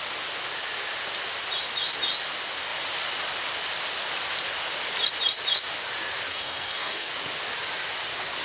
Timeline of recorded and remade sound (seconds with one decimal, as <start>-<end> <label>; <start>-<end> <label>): 0.0-6.3 recorded; 6.3-7.1 remade; 7.1-8.4 recorded